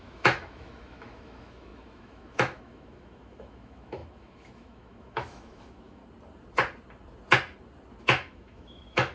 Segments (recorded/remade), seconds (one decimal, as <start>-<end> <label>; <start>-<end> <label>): 0.0-6.0 remade; 6.0-8.0 recorded; 8.0-9.1 remade